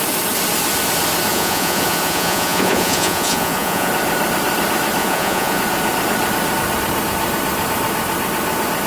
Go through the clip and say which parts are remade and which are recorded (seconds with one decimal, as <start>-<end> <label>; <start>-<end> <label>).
0.0-1.3 recorded; 1.3-3.9 remade; 3.9-5.0 recorded; 5.0-5.6 remade; 5.6-8.9 recorded